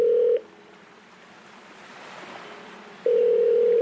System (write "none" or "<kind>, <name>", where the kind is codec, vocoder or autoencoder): vocoder, BigVGAN v2